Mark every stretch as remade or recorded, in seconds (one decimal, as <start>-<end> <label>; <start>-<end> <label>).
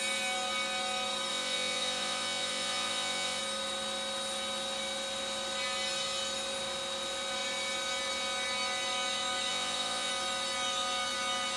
0.0-1.3 recorded; 1.3-3.4 remade; 3.4-9.5 recorded; 9.5-10.1 remade; 10.1-11.6 recorded